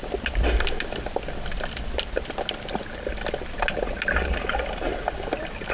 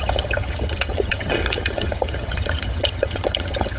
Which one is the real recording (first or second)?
first